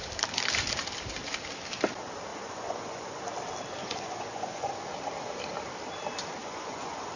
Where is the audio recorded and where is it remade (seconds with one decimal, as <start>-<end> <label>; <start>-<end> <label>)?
0.0-2.3 recorded; 2.3-3.2 remade; 3.2-3.8 recorded; 3.8-4.7 remade; 4.7-6.4 recorded; 6.4-7.2 remade